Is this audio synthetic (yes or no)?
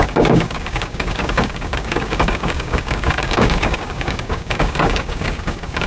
yes